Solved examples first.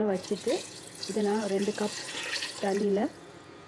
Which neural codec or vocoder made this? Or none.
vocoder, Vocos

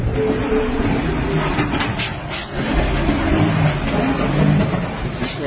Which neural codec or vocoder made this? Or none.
none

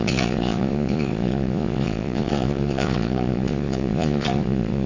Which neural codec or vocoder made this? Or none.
vocoder, Vocos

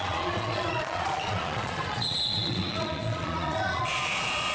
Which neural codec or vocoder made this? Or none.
vocoder, Vocos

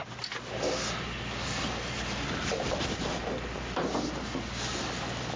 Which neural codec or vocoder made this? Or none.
none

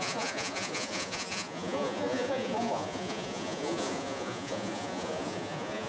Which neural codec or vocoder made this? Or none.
vocoder, Vocos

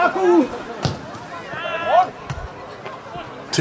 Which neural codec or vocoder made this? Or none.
none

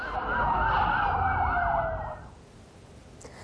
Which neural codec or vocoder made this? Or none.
none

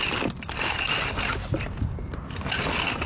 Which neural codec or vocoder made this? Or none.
none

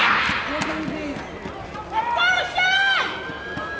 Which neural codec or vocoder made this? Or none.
none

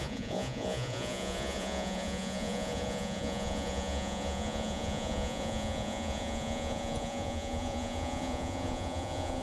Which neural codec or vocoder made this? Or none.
vocoder, Vocos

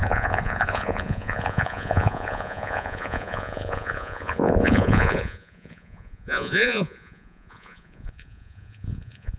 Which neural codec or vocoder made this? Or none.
vocoder, Vocos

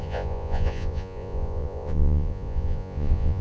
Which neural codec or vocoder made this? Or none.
vocoder, Vocos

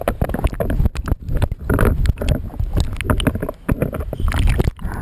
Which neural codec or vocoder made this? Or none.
none